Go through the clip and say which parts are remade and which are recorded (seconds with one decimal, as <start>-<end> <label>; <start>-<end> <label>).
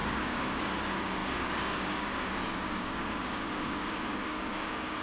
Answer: 0.0-5.0 remade